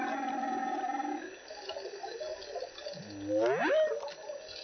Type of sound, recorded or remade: recorded